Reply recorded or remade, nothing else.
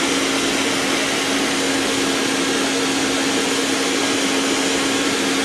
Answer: recorded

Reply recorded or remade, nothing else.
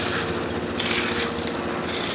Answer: recorded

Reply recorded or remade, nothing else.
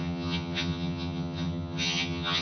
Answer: remade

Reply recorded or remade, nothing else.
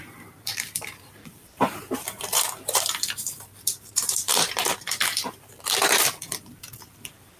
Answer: remade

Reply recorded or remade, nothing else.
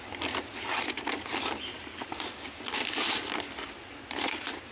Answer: recorded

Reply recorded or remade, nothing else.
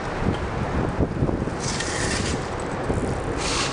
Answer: recorded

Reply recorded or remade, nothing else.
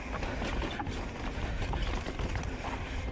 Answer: recorded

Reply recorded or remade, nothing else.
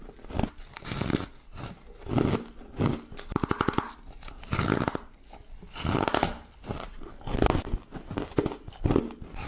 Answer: recorded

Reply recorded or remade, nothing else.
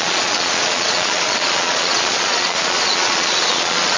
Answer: remade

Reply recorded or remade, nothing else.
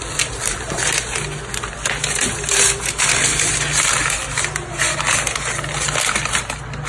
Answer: recorded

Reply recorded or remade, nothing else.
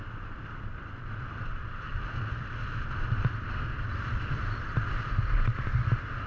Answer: recorded